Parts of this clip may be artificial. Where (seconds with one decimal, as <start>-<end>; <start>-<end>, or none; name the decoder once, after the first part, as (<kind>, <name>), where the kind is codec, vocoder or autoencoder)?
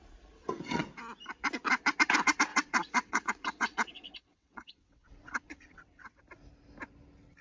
0.4-0.9 (vocoder, WaveNeXt); 2.5-6.2